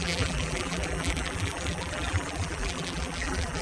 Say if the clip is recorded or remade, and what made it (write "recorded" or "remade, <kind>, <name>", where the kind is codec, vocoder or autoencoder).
remade, vocoder, BigVGAN v2